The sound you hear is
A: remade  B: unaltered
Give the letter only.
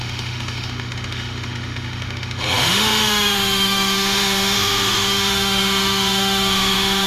A